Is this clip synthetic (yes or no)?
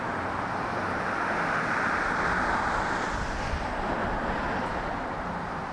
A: no